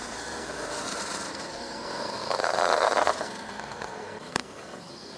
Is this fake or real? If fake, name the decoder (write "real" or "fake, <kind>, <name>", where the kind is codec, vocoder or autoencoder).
fake, codec, SNAC